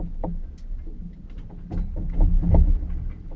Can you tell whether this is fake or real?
real